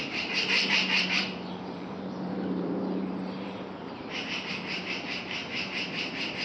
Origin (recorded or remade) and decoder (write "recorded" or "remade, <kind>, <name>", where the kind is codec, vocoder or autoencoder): remade, vocoder, BigVGAN v2